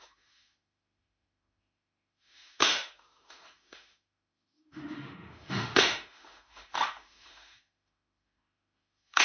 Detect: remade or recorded remade